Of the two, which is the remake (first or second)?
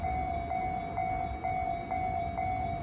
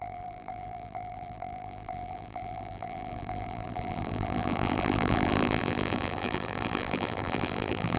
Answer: second